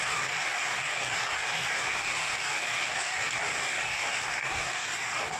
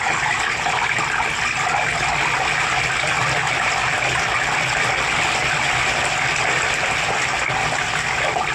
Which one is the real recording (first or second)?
second